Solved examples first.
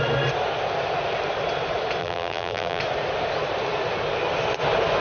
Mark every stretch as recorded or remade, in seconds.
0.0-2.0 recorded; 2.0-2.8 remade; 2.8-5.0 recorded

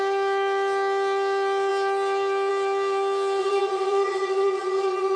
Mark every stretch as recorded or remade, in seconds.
0.0-3.4 recorded; 3.4-5.2 remade

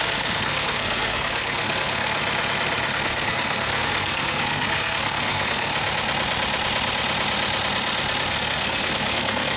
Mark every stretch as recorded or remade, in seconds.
0.0-2.2 remade; 2.2-2.9 recorded; 2.9-5.7 remade; 5.7-8.3 recorded; 8.3-9.6 remade

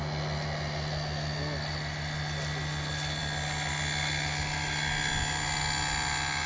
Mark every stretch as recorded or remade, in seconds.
0.0-6.5 recorded

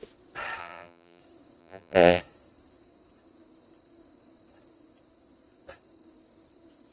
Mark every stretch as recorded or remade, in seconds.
0.0-0.6 recorded; 0.6-1.2 remade; 1.2-1.6 recorded; 1.6-2.2 remade; 2.2-6.9 recorded

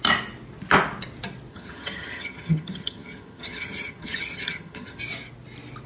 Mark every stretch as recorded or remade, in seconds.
0.0-1.5 recorded; 1.5-5.0 remade; 5.0-5.9 recorded

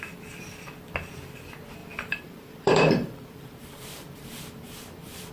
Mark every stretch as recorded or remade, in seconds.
0.0-1.8 recorded; 1.8-5.3 remade